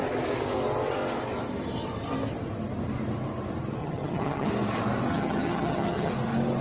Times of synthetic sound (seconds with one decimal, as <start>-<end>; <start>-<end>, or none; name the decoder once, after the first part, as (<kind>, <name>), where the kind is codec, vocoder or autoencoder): 3.8-4.5 (vocoder, HiFi-GAN); 5.1-6.1